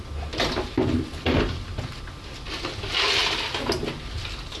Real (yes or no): yes